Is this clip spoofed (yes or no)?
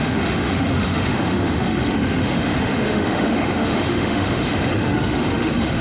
yes